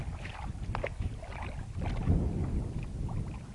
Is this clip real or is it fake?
real